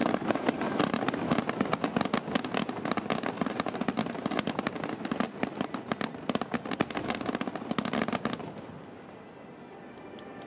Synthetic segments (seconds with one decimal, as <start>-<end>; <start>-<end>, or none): 0.0-1.0